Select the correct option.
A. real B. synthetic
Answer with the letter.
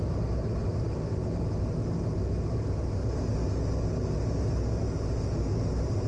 A